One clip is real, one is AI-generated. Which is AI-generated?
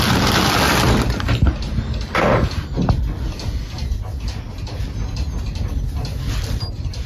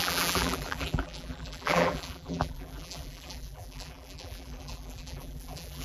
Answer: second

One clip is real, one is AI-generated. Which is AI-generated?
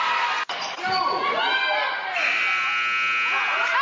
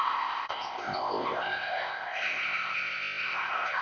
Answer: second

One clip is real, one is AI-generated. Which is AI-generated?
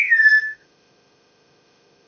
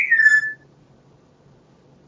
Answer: first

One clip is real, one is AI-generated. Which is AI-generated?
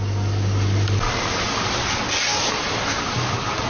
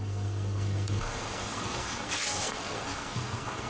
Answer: second